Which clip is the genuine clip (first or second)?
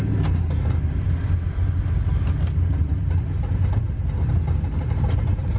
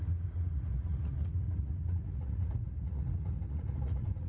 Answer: first